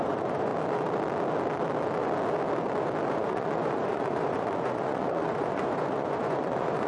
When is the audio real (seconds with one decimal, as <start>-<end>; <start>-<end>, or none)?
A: 0.5-3.1